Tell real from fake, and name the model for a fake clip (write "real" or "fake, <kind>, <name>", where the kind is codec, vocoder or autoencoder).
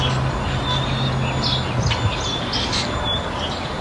real